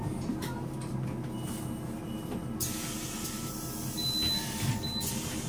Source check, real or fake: real